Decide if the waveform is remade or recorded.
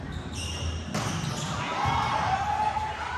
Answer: recorded